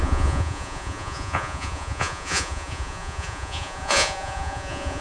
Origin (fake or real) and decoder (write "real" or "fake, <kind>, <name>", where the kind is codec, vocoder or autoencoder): fake, vocoder, Vocos